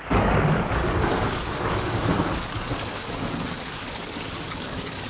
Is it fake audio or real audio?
fake